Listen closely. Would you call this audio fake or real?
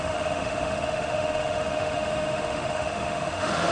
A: fake